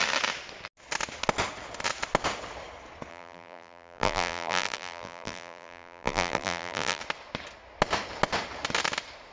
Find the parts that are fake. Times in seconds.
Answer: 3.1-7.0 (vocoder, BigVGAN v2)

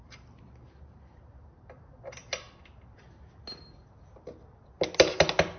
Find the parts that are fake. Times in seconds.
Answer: none

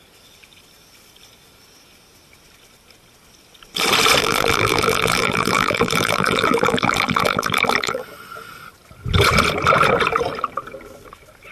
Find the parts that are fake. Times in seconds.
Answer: 4.2-8.0 (vocoder, BigVGAN v2)

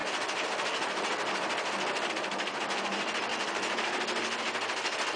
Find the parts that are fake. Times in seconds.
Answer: none

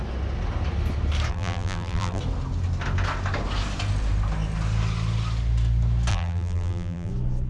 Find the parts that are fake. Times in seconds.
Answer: 1.3-2.2 (vocoder, BigVGAN v2); 6.1-7.1

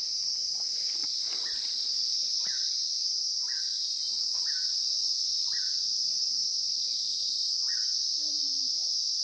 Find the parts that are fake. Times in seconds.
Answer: 1.0-2.4 (vocoder, BigVGAN v2); 4.6-9.2

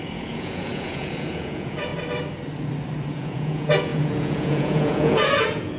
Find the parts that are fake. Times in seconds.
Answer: 0.0-1.9 (vocoder, Vocos); 3.1-5.8

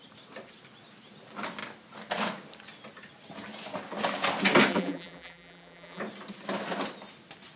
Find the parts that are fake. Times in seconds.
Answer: 4.7-6.0 (vocoder, BigVGAN v2)